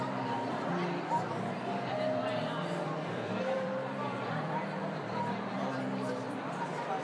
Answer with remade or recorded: remade